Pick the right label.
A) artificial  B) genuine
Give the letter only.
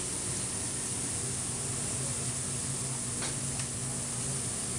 B